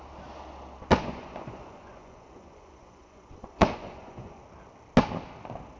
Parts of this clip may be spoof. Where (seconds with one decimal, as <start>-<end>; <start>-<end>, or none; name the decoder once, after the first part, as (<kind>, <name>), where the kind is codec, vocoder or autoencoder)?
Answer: 0.9-4.4 (vocoder, Vocos)